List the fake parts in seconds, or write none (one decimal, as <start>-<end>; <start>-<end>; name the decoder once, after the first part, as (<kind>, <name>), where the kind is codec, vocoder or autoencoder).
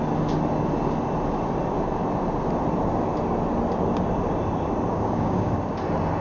4.9-5.5 (codec, DAC)